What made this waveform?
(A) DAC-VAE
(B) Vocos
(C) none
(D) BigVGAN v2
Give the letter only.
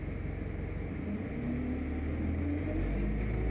C